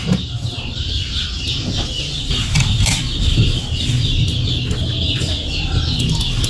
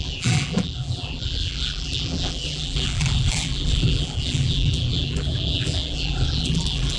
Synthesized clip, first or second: second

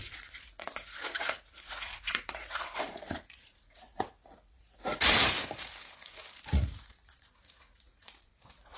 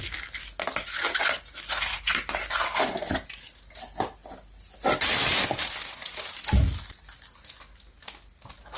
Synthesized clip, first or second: first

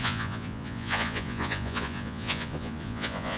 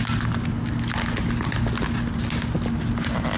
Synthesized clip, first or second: first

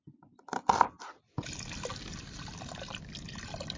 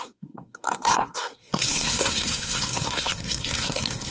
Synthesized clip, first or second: second